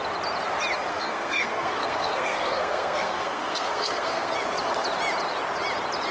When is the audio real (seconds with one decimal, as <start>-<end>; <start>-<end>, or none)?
0.0-0.9; 4.3-6.1